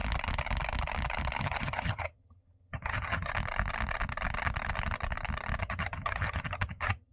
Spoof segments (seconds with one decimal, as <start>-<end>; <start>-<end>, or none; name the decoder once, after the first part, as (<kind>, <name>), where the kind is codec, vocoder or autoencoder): 1.4-3.3 (vocoder, HiFi-GAN); 5.6-7.1